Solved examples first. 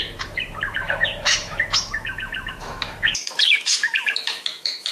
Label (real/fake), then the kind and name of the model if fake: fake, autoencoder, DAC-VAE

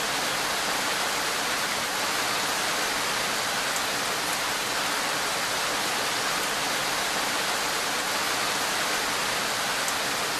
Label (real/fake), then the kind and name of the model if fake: real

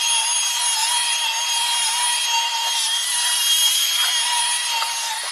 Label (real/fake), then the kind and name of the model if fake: real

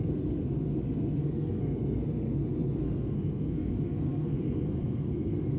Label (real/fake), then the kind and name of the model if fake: fake, codec, SNAC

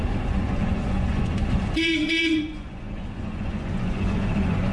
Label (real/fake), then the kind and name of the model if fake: fake, vocoder, Vocos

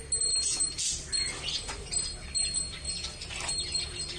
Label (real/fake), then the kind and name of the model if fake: real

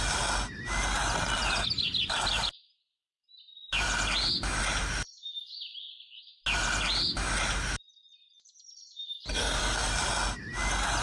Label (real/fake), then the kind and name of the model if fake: real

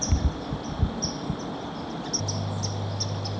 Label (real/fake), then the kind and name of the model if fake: real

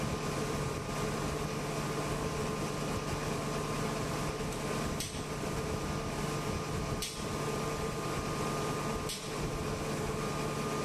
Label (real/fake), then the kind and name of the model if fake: real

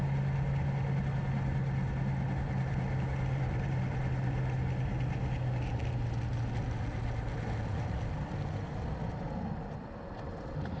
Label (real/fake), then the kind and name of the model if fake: real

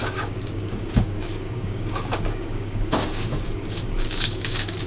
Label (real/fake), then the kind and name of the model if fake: fake, codec, DAC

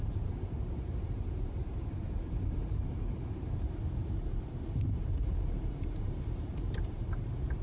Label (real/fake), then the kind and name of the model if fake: fake, vocoder, BigVGAN v2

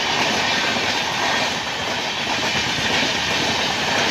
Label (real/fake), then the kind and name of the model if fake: real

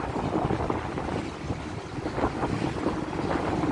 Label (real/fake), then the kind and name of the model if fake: real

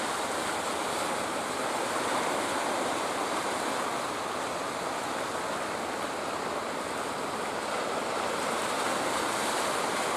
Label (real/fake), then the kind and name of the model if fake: real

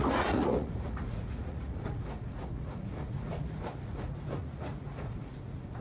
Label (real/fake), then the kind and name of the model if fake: fake, vocoder, Vocos